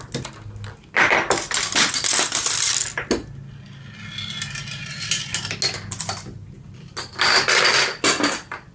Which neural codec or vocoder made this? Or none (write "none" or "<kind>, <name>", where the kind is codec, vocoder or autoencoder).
none